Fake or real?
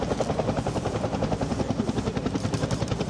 fake